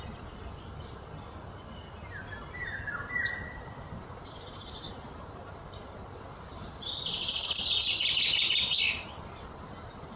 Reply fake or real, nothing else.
fake